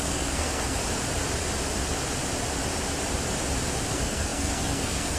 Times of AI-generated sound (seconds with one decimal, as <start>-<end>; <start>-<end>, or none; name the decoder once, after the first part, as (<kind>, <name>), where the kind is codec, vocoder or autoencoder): 0.0-0.8 (codec, SNAC); 3.9-5.2